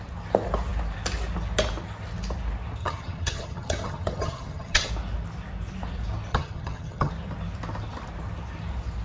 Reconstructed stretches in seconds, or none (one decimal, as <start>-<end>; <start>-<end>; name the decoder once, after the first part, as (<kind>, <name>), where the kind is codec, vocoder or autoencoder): 2.8-4.9 (vocoder, HiFi-GAN); 6.3-7.1